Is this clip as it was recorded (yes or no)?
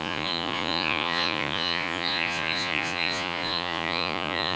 no